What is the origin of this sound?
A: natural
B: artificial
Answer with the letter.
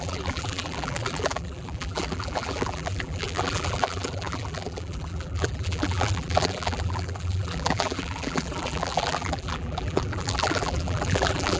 B